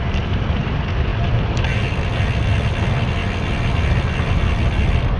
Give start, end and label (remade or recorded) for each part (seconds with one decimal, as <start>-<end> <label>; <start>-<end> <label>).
0.0-5.2 recorded

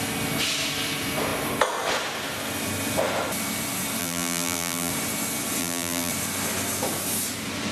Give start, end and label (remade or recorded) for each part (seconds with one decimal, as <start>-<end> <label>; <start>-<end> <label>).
0.0-4.0 recorded; 4.0-4.9 remade; 4.9-5.6 recorded; 5.6-6.1 remade; 6.1-7.7 recorded

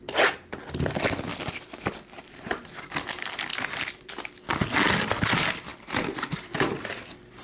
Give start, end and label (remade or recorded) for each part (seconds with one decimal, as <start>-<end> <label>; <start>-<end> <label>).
0.0-1.3 recorded; 1.3-2.8 remade; 2.8-3.5 recorded; 3.5-4.1 remade; 4.1-7.4 recorded

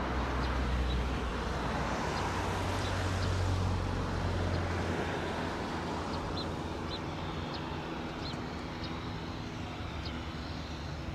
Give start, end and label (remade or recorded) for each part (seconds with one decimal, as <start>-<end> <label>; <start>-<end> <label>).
0.0-11.1 recorded

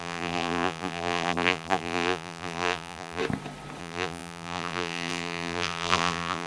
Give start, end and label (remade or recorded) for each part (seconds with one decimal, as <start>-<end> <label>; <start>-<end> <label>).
0.0-3.2 remade; 3.2-3.8 recorded; 3.8-6.5 remade

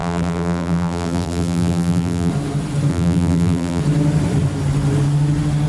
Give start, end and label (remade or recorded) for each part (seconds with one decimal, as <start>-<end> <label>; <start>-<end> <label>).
0.0-2.3 remade; 2.3-2.9 recorded; 2.9-3.8 remade; 3.8-5.7 recorded

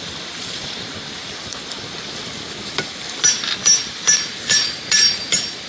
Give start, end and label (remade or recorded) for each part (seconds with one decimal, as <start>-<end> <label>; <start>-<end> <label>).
0.0-5.7 remade

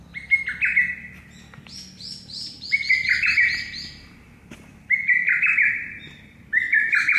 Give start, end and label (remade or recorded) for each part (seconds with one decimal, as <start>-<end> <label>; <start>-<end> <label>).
0.0-5.8 recorded; 5.8-6.6 remade; 6.6-7.2 recorded